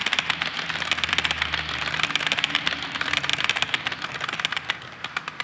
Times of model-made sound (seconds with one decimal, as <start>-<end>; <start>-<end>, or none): none

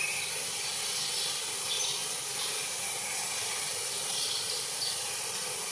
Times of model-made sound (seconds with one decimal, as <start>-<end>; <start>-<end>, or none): 0.0-2.0; 2.9-5.7

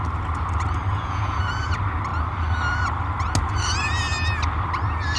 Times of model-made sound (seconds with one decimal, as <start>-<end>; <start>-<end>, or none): 0.9-1.4